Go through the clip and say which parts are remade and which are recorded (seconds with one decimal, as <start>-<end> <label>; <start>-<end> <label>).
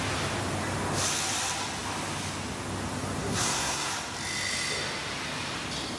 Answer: 0.0-3.2 recorded; 3.2-3.9 remade; 3.9-6.0 recorded